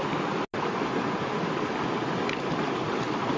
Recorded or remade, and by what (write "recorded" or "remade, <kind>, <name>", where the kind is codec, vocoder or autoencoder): recorded